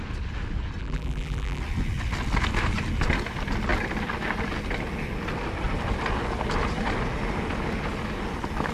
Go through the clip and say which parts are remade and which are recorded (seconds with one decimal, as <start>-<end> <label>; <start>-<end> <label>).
0.0-0.8 recorded; 0.8-1.6 remade; 1.6-8.7 recorded